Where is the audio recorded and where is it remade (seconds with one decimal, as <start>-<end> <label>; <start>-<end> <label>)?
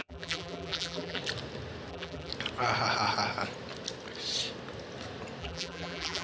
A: 0.0-1.2 remade; 1.2-1.9 recorded; 1.9-2.3 remade; 2.3-5.4 recorded; 5.4-6.2 remade